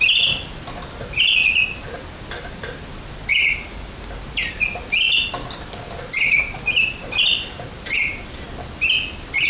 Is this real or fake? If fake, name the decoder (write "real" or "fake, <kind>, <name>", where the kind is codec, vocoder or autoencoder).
real